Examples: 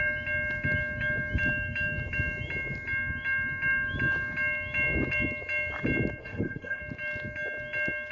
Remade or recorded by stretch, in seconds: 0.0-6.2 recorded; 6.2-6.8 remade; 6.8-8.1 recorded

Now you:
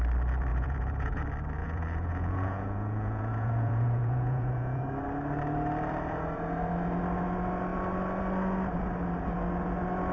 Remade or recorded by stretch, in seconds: 0.0-0.5 recorded; 0.5-1.2 remade; 1.2-1.6 recorded; 1.6-4.8 remade; 4.8-10.1 recorded

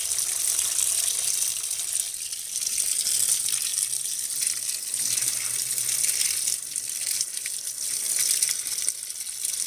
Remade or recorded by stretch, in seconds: 0.0-9.7 recorded

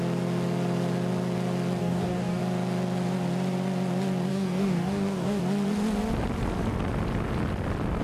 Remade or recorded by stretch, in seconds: 0.0-1.8 recorded; 1.8-2.4 remade; 2.4-4.3 recorded; 4.3-5.4 remade; 5.4-8.0 recorded

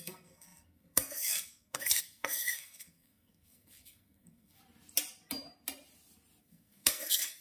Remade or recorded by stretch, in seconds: 0.0-4.6 remade; 4.6-6.4 recorded; 6.4-7.4 remade